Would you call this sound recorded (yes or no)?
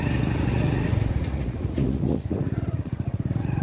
no